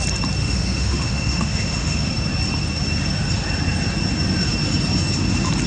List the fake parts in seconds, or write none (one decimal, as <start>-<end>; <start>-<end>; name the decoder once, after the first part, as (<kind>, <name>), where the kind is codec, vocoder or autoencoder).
0.4-2.1 (autoencoder, DAC-VAE)